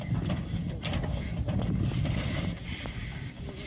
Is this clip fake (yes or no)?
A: no